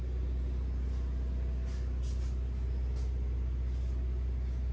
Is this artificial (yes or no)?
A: no